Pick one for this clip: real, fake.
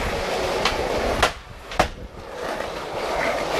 real